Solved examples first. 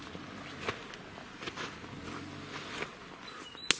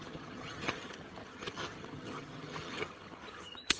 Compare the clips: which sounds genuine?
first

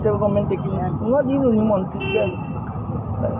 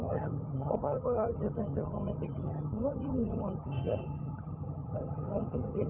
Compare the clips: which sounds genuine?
first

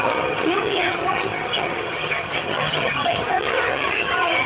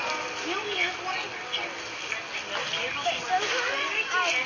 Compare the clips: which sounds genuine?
second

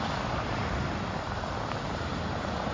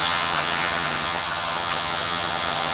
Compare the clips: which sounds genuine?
first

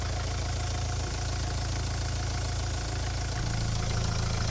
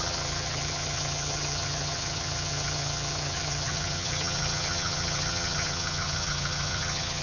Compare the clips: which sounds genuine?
first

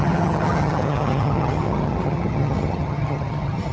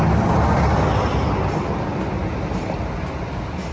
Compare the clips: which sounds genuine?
second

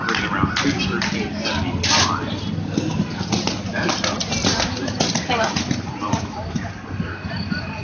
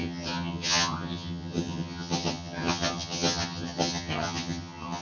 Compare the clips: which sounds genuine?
first